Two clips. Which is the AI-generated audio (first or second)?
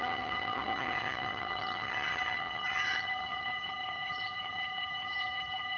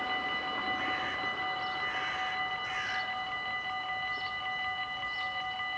first